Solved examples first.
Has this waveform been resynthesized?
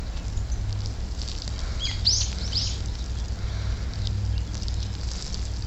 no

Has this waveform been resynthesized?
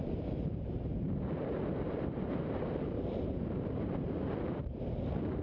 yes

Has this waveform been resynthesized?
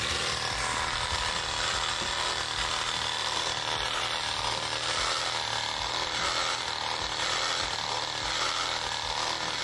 no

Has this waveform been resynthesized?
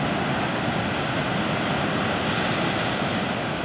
yes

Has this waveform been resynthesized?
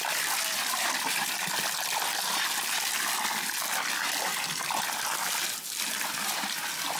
no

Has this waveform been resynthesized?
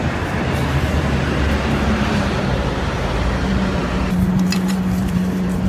yes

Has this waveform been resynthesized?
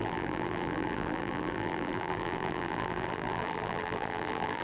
yes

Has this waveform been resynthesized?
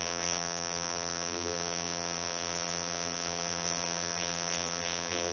yes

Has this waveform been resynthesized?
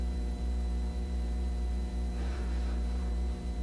yes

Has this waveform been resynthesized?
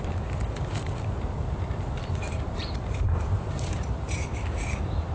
yes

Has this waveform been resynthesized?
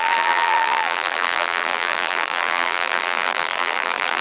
yes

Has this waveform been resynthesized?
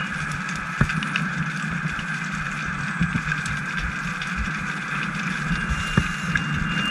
no